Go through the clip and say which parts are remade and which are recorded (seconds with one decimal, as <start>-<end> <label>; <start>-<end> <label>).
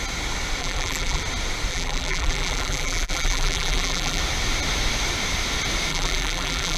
0.0-0.6 recorded; 0.6-1.2 remade; 1.2-1.7 recorded; 1.7-4.2 remade; 4.2-5.9 recorded; 5.9-6.8 remade